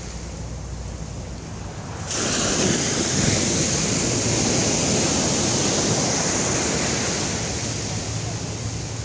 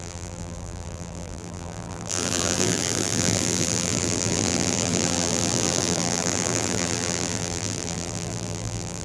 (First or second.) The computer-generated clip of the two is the second